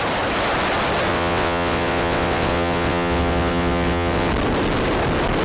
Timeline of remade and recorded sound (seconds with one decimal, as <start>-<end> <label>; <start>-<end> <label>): 0.0-1.1 recorded; 1.1-4.3 remade; 4.3-5.4 recorded